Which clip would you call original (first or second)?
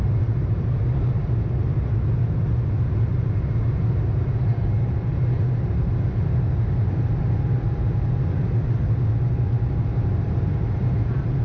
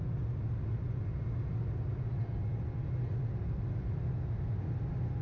second